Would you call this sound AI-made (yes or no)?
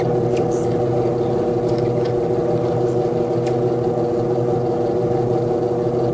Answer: no